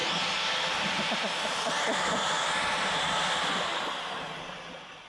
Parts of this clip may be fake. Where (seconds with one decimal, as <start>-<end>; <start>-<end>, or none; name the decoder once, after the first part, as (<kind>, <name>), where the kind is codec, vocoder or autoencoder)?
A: none